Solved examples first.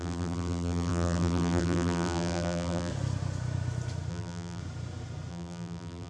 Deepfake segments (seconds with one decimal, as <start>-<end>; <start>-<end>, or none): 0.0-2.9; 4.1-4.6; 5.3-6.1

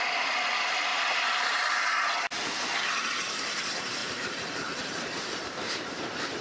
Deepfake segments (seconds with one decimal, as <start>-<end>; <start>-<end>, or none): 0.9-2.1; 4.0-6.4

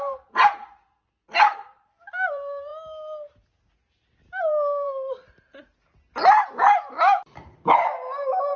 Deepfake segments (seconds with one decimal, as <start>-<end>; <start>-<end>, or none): 0.0-0.8; 1.6-2.7; 4.4-5.5

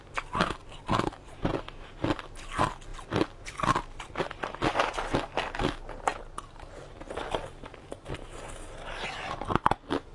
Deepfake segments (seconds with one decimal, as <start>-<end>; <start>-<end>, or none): 0.6-1.5

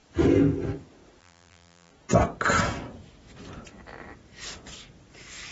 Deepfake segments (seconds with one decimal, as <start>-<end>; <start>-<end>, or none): 1.2-1.9